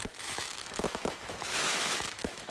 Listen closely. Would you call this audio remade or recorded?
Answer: remade